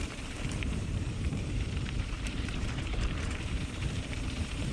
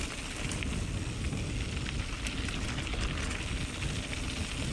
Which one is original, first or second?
second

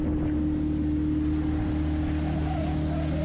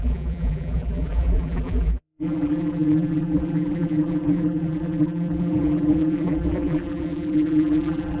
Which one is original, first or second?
first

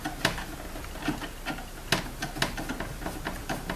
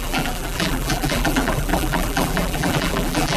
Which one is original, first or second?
first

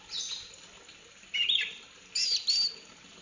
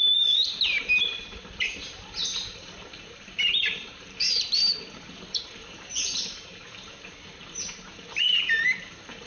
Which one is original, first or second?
first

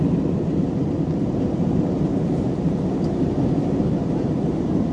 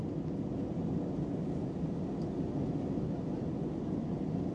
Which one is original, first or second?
second